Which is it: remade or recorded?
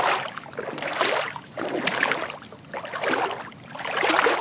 recorded